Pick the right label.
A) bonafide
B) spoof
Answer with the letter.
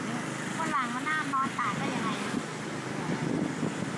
A